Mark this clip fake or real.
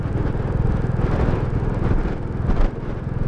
real